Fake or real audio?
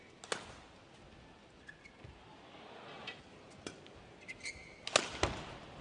real